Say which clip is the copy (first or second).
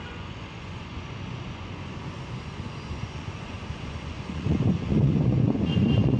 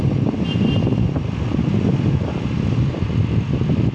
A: first